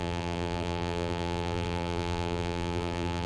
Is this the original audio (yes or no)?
no